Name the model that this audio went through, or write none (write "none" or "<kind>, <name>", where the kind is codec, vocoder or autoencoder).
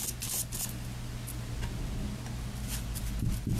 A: none